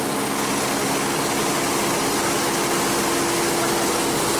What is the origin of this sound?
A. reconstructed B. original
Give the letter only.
B